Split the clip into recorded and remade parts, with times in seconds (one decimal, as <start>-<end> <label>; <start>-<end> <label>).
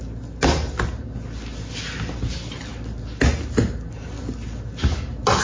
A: 0.0-5.4 recorded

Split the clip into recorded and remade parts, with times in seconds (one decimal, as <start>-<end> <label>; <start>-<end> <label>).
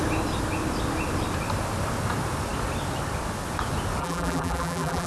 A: 0.0-4.0 recorded; 4.0-5.1 remade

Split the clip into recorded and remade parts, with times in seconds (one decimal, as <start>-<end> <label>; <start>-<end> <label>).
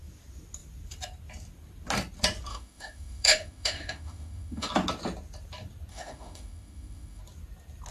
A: 0.0-2.5 recorded; 2.5-4.7 remade; 4.7-5.9 recorded; 5.9-7.2 remade; 7.2-7.9 recorded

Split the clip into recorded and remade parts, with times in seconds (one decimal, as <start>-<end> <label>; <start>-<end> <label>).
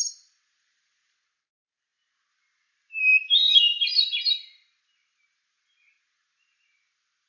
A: 0.0-7.3 recorded